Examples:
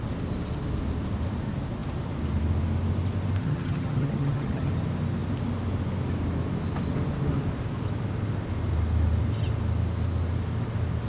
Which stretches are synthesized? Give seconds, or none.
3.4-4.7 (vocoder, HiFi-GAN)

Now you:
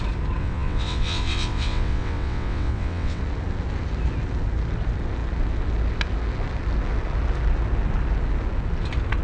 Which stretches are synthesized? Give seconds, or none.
0.4-3.2 (vocoder, WaveNeXt)

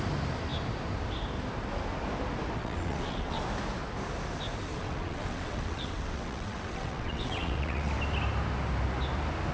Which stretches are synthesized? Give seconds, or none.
2.6-3.4 (vocoder, WaveNeXt); 4.7-7.9

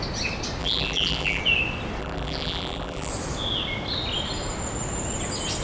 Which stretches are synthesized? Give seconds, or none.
0.6-1.4 (vocoder, BigVGAN v2); 2.0-3.1

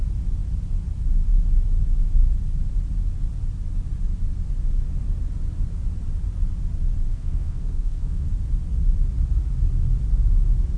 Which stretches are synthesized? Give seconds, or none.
7.1-8.3 (codec, SNAC)